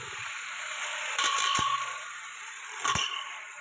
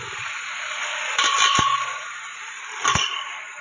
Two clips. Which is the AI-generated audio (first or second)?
first